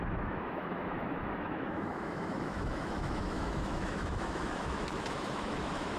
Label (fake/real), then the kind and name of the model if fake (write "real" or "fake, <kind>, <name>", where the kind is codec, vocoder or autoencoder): fake, autoencoder, DAC-VAE